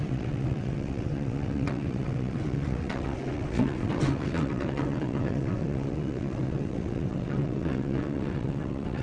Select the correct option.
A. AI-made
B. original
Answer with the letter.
A